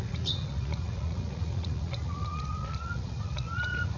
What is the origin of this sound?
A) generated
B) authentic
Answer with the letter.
A